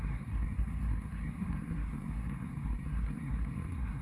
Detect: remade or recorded remade